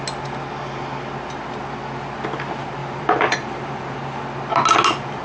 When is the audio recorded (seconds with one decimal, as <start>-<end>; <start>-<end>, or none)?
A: 0.0-2.8; 4.2-5.2